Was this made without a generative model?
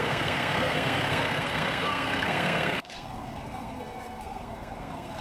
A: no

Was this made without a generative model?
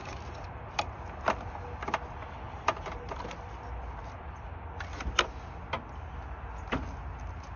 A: yes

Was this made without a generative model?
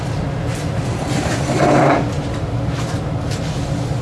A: no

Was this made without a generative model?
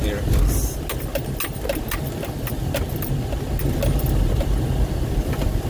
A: yes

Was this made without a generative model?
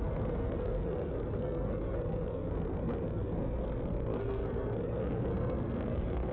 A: no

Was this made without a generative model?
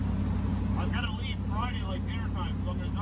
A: yes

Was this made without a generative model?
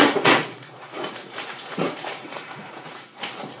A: no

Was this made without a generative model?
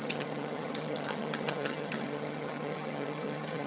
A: no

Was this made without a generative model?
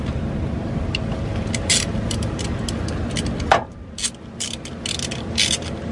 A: yes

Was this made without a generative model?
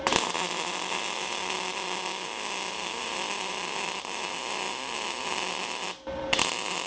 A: no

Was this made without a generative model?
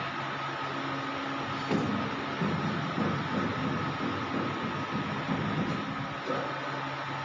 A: yes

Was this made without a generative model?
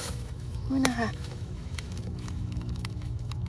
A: no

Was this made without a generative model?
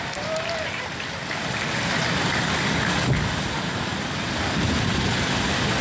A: no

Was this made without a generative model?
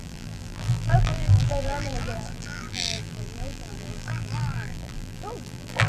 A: no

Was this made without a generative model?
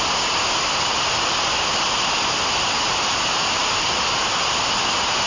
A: yes